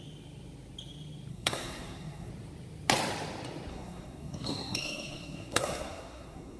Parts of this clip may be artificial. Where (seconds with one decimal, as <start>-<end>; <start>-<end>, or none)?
1.3-2.3; 3.7-6.6